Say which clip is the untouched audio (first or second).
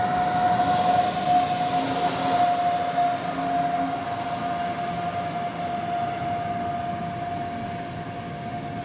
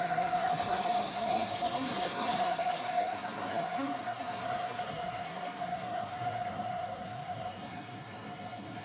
first